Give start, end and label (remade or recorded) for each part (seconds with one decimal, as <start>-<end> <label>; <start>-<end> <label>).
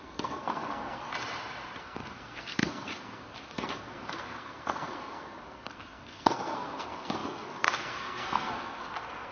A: 0.0-1.1 remade; 1.1-1.8 recorded; 1.8-9.3 remade